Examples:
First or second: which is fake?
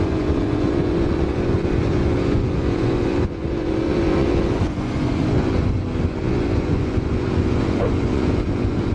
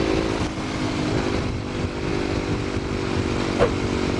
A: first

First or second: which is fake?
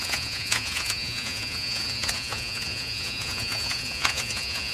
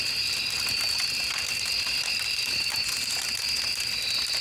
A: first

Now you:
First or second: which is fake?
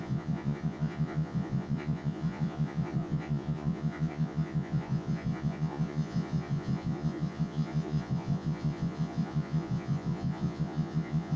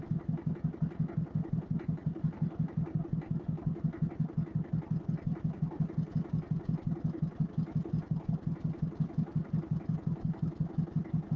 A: first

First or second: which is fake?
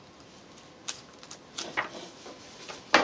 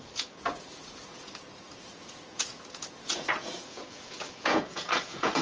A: second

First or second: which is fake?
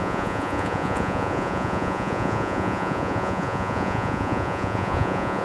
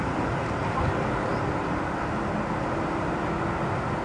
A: first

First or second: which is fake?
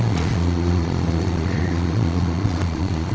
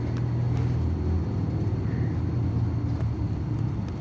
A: first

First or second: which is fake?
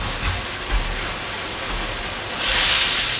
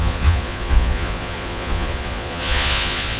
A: second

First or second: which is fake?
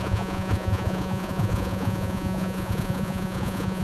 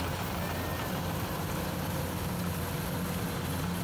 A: first